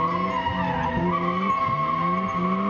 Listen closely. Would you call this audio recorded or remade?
recorded